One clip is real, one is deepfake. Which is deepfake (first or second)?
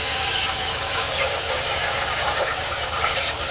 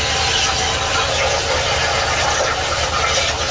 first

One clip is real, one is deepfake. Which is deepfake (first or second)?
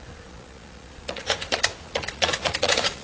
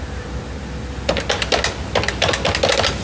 first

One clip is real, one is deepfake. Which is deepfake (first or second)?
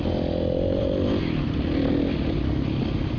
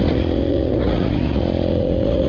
second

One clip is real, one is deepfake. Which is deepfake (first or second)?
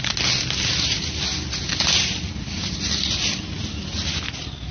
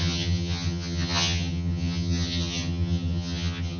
second